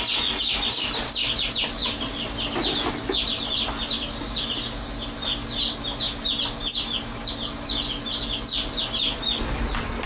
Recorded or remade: recorded